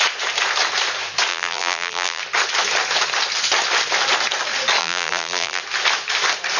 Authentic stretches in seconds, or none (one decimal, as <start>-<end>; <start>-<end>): 0.0-1.3; 2.2-4.8; 5.6-6.6